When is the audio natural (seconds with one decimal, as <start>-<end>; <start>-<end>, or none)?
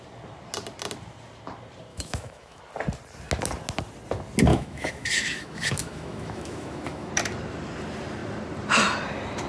0.0-1.9; 2.6-4.5; 7.1-9.5